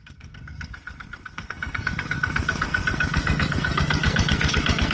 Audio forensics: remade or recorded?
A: remade